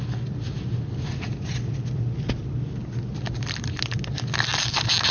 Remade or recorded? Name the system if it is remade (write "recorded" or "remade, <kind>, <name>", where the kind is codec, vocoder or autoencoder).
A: recorded